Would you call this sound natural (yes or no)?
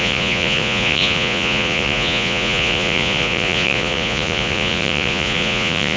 no